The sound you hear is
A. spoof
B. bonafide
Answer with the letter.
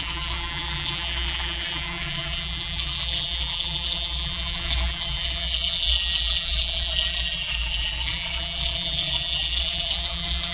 A